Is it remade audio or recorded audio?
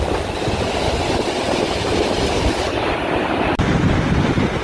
recorded